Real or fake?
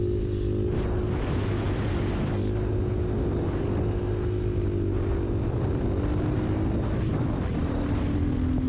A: real